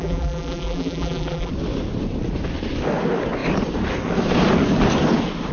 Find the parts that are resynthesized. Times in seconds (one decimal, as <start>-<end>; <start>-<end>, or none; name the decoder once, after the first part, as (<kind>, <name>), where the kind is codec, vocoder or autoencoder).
0.0-1.5 (vocoder, BigVGAN v2)